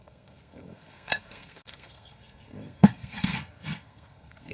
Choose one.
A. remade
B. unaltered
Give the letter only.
A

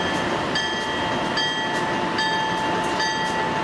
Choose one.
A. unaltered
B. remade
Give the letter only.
A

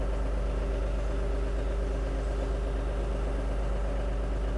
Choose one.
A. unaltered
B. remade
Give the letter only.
A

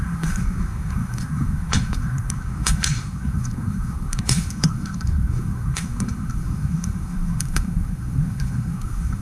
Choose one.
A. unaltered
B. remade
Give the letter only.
B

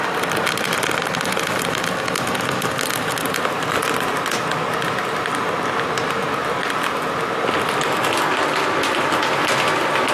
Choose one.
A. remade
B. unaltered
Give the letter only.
B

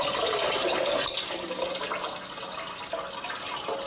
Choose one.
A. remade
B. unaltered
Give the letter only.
B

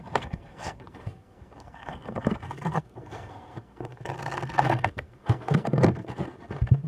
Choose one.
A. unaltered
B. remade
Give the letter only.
B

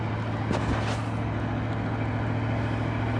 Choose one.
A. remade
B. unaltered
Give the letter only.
B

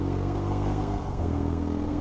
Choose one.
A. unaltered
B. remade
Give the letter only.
B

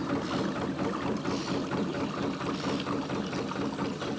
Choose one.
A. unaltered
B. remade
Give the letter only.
A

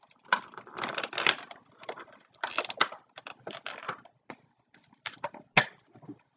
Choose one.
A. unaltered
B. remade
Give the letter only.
A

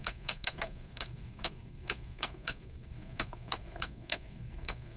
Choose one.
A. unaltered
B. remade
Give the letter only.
B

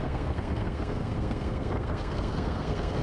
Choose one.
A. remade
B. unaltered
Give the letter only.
A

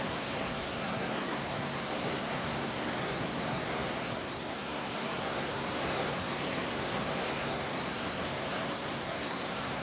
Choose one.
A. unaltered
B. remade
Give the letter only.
B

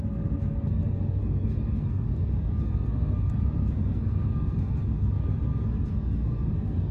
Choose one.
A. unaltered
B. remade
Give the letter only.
B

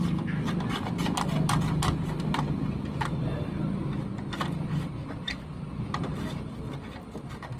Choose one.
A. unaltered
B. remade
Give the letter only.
A